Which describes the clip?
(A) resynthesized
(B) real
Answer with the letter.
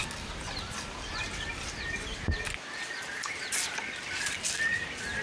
B